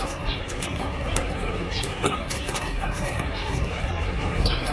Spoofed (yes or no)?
yes